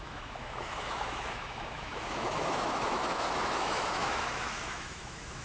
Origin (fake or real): fake